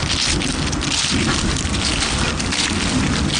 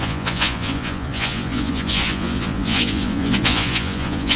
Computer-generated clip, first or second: second